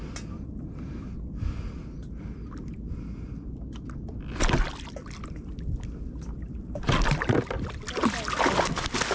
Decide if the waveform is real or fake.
real